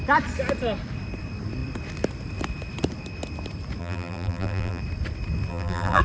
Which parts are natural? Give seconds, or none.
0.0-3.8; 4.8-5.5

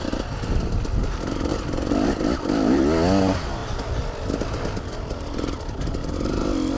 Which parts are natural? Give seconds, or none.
0.7-1.5; 2.8-3.6; 4.8-6.8

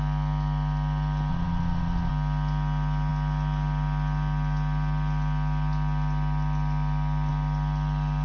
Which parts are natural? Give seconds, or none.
0.0-1.3; 2.1-8.2

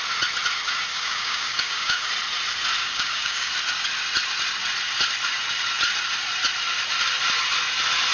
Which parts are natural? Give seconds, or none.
0.0-0.9; 2.1-2.8; 3.5-8.1

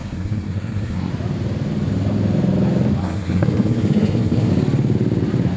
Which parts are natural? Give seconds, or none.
1.1-3.0; 4.5-5.6

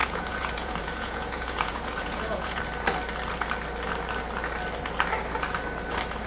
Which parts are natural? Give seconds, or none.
2.6-6.3

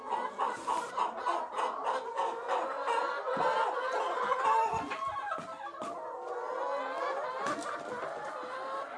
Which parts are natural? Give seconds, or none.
0.0-9.0